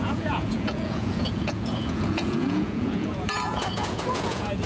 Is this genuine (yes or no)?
no